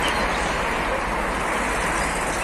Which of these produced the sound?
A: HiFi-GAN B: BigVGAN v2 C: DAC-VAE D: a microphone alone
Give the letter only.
D